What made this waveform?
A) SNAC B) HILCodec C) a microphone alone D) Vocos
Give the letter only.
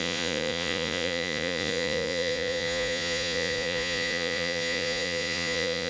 D